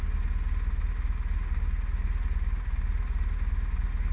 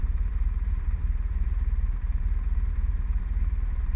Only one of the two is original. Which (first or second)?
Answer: first